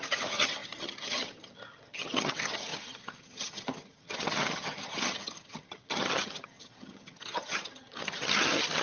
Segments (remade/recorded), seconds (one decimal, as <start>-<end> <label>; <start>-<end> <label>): 0.0-8.8 remade